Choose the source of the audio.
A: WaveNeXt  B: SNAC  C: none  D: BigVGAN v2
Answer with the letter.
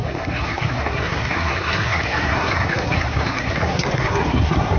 B